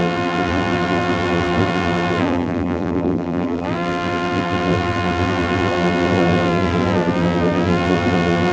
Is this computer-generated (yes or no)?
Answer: yes